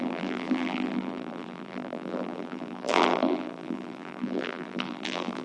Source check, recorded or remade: remade